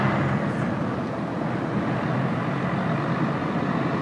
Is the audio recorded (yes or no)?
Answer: yes